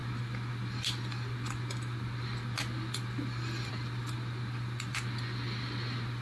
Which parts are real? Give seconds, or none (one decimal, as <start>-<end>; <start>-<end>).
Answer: 0.0-6.2